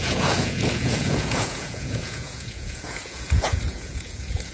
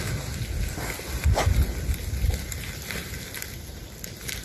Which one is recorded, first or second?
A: second